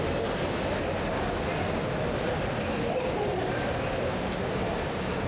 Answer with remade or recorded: recorded